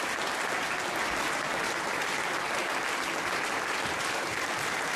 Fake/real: real